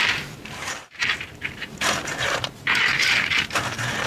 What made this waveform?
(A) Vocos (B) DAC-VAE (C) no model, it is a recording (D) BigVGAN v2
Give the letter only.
D